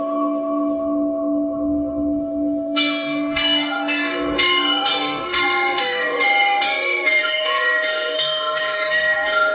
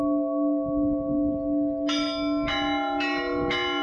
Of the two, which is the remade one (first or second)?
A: first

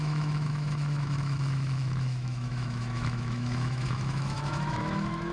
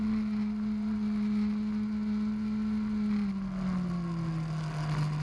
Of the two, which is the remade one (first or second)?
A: first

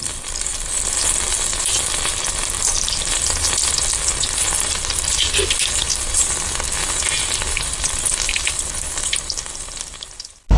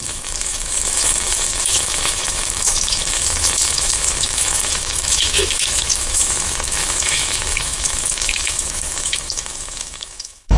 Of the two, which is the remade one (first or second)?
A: second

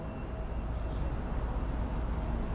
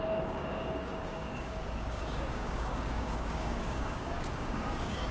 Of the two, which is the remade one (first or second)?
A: second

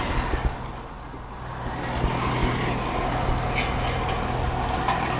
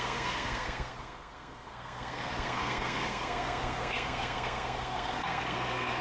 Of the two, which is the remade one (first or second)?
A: second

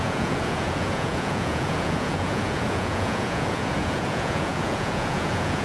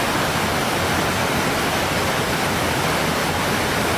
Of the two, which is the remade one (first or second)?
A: first